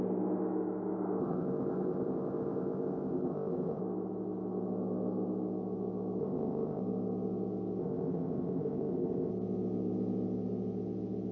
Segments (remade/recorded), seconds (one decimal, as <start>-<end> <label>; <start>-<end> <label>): 0.0-1.2 recorded; 1.2-3.8 remade; 3.8-6.2 recorded; 6.2-6.8 remade; 6.8-7.8 recorded; 7.8-9.3 remade; 9.3-11.3 recorded

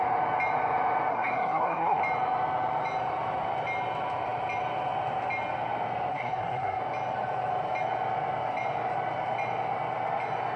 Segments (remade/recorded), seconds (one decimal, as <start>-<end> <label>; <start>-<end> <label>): 0.0-1.1 recorded; 1.1-2.0 remade; 2.0-6.1 recorded; 6.1-6.8 remade; 6.8-10.6 recorded